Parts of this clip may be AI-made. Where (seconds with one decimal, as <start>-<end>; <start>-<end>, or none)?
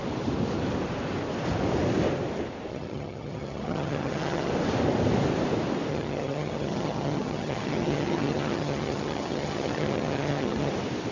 2.7-4.5; 5.9-10.7